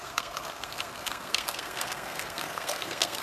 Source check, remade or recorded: remade